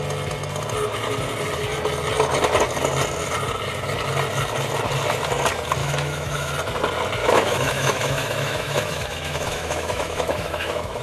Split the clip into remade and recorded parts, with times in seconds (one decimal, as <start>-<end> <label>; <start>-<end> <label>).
0.0-5.8 recorded; 5.8-6.5 remade; 6.5-7.2 recorded; 7.2-11.0 remade